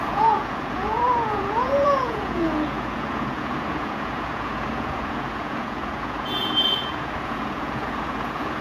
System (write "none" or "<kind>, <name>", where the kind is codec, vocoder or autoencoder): vocoder, Vocos